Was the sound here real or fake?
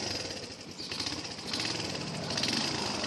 real